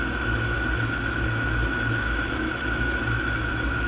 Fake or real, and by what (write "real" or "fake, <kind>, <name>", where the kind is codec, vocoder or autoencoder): fake, autoencoder, DAC-VAE